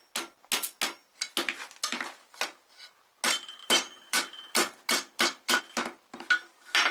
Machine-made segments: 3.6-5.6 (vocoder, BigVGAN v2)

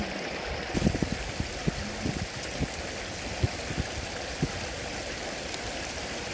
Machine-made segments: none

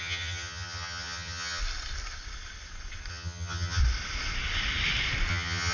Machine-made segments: 0.0-1.6 (vocoder, HiFi-GAN); 3.1-3.8; 5.3-5.7

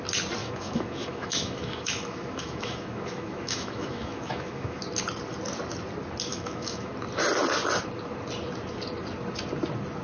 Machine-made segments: 0.4-4.8 (autoencoder, DAC-VAE); 6.3-6.9

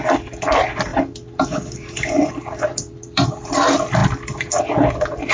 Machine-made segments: 0.9-3.5 (vocoder, BigVGAN v2)